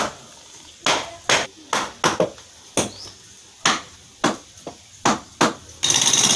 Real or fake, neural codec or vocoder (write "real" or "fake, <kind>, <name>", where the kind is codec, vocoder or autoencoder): real